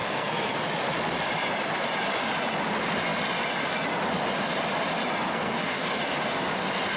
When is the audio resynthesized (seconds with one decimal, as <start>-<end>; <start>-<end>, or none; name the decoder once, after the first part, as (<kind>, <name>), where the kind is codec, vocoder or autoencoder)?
0.0-0.6 (codec, SNAC); 5.3-5.9